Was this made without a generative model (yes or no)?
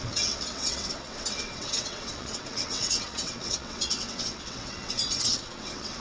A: no